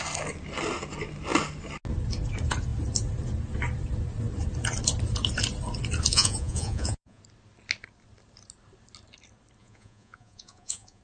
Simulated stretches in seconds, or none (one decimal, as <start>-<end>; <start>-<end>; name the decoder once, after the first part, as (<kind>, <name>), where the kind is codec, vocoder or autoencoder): 6.1-7.2 (vocoder, Vocos); 9.6-11.0